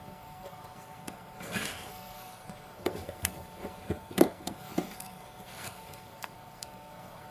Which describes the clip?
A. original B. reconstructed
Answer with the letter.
B